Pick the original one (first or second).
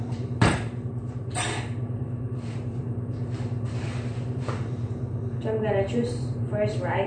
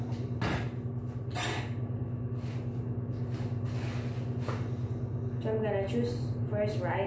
second